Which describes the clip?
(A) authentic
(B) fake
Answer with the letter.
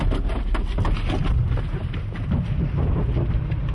A